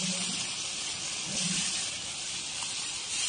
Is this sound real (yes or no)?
yes